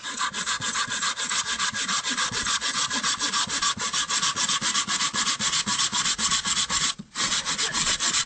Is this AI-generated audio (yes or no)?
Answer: yes